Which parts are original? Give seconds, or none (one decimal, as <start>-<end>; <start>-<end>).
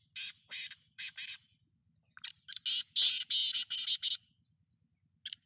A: 0.0-5.5